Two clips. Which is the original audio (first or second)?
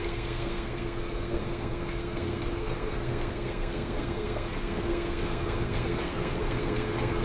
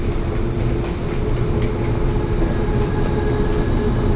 second